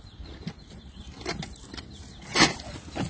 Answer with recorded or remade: recorded